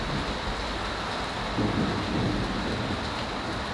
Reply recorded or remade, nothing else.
recorded